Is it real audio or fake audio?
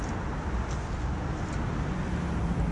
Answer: real